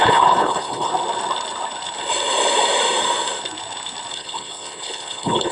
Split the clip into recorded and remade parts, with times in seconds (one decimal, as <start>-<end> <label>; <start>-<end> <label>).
0.0-0.9 remade; 0.9-4.1 recorded; 4.1-5.5 remade